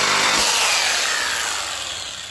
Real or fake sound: real